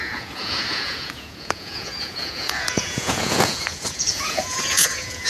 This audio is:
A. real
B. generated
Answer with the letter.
B